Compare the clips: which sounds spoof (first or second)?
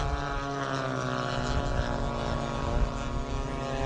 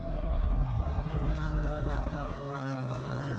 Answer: second